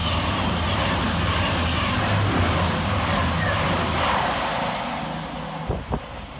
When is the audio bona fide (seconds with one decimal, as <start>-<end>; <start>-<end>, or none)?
0.0-6.4

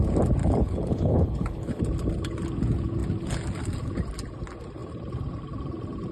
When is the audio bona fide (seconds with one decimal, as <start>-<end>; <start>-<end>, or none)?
0.0-0.4; 1.8-6.1

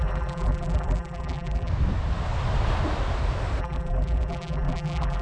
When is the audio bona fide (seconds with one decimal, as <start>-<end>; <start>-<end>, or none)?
1.7-3.6

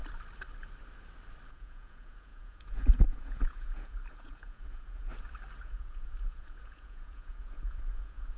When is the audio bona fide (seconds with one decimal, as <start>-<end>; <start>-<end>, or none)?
0.0-1.5; 5.1-5.6